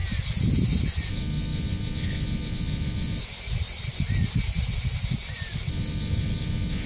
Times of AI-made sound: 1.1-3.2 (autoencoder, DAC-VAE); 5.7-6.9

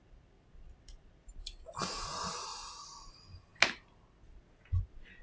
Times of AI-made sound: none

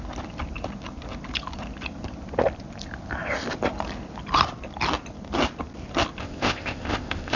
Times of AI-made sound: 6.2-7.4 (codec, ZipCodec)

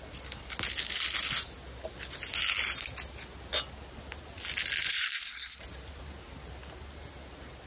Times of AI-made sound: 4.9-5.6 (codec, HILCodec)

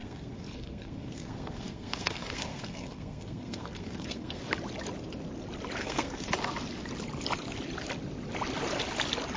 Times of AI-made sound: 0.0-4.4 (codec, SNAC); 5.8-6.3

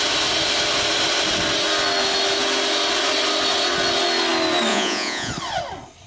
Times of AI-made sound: 4.7-5.3 (vocoder, Vocos)

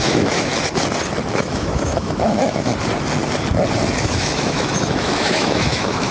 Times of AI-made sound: 0.0-0.5 (autoencoder, DAC-VAE); 1.3-2.7; 4.0-6.1